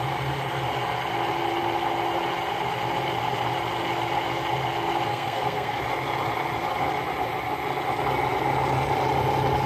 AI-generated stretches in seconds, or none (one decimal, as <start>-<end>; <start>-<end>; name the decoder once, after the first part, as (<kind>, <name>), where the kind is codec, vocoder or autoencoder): 5.1-5.8 (codec, SNAC)